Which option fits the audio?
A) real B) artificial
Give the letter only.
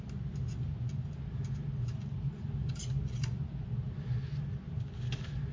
A